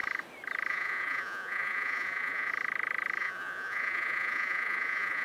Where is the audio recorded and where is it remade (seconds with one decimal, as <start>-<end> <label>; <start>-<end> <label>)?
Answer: 0.0-0.7 recorded; 0.7-2.5 remade; 2.5-3.2 recorded; 3.2-5.2 remade